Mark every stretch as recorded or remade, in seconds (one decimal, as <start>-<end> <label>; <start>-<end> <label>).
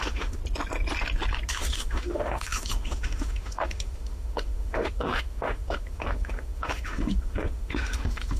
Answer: 0.0-0.4 remade; 0.4-1.5 recorded; 1.5-8.4 remade